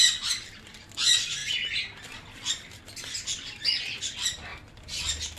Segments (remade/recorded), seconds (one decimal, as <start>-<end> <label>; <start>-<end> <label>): 0.0-1.4 remade; 1.4-3.1 recorded; 3.1-4.5 remade; 4.5-5.4 recorded